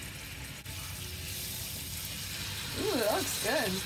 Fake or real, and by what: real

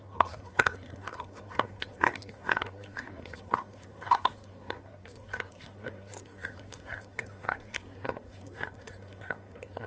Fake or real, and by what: fake, codec, SNAC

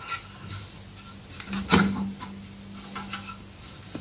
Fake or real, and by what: real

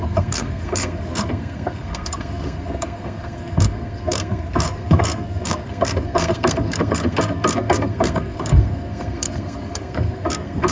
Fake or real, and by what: fake, codec, SNAC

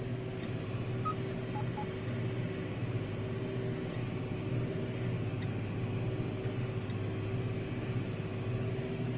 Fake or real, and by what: real